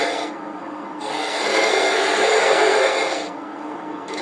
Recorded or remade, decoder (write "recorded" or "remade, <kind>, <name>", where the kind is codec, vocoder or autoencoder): remade, codec, SNAC